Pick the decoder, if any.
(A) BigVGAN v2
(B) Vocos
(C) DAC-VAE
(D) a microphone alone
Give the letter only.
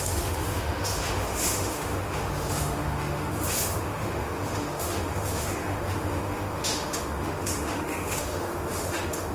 C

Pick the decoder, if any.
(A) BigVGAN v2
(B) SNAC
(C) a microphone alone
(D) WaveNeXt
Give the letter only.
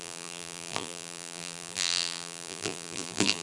A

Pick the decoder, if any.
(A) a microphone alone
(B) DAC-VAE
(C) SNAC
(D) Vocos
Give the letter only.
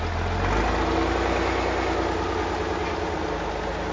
A